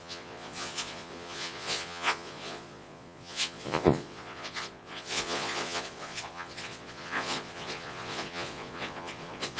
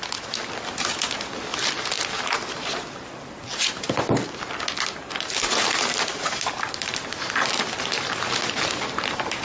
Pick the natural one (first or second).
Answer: second